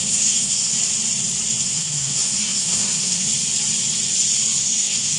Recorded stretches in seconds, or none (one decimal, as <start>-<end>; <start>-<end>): 0.7-1.6; 3.3-4.6